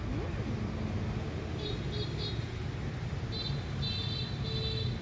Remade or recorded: recorded